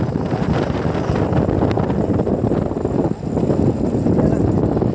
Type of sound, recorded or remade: recorded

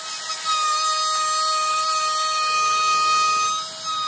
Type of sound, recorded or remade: recorded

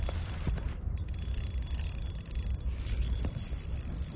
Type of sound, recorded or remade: recorded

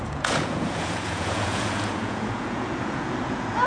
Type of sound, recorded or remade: remade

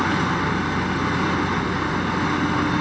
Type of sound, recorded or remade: recorded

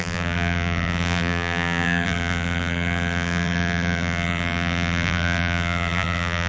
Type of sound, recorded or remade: remade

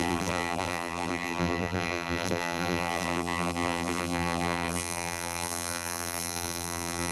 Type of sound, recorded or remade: remade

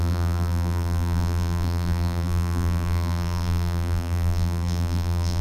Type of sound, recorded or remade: remade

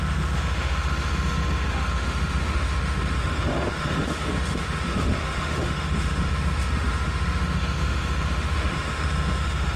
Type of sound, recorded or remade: remade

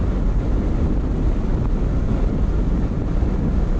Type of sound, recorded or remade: recorded